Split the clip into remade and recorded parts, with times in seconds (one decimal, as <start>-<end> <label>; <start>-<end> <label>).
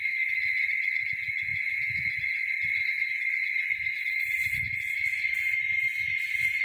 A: 0.0-1.5 recorded; 1.5-2.2 remade; 2.2-6.6 recorded